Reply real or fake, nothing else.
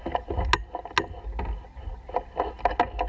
real